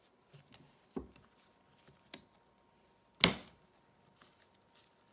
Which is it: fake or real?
real